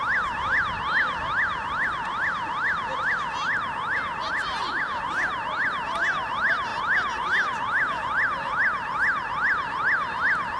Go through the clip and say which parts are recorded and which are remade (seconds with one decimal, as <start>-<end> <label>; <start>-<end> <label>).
0.0-10.6 recorded